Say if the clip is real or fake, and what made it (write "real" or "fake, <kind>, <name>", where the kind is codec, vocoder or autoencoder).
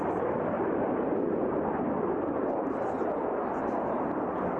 fake, vocoder, BigVGAN v2